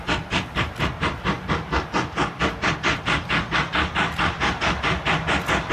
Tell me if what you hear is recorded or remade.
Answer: recorded